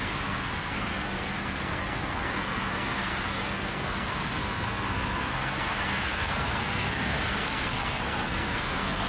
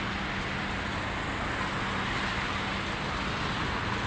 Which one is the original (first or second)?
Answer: second